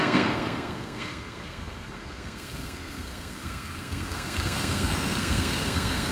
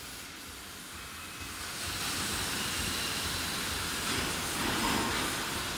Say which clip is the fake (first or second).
first